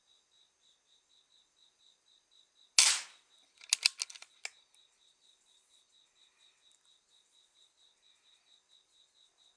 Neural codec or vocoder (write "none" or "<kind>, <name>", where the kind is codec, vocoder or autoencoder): none